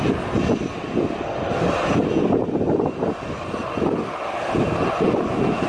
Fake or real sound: real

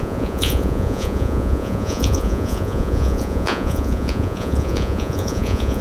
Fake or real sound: fake